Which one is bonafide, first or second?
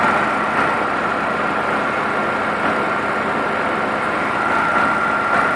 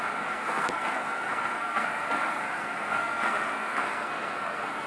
first